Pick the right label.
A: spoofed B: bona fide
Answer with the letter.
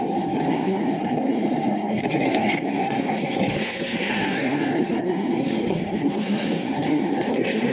A